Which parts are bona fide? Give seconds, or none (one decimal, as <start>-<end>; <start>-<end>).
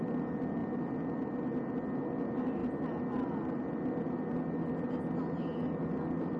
0.0-6.4